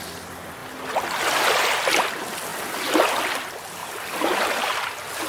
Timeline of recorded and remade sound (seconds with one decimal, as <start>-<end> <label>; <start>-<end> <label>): 0.0-3.8 recorded; 3.8-5.3 remade